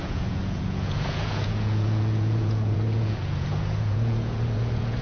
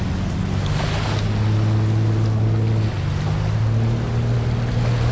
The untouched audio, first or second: second